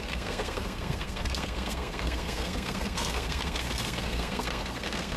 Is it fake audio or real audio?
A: fake